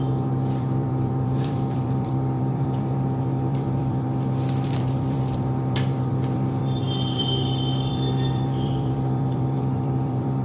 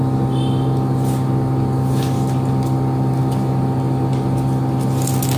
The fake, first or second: first